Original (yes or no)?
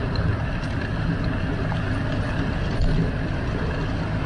yes